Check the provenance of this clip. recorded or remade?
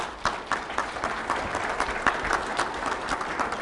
recorded